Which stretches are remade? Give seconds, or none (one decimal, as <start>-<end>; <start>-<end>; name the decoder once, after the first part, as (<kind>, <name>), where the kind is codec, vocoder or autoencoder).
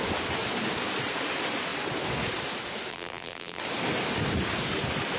2.9-3.6 (vocoder, BigVGAN v2)